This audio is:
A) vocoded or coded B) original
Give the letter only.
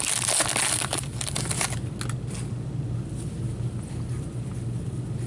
B